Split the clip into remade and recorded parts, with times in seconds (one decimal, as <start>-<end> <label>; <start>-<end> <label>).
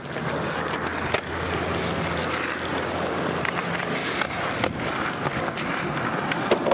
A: 0.0-6.7 recorded